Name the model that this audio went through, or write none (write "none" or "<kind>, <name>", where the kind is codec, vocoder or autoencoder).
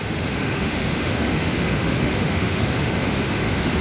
autoencoder, DAC-VAE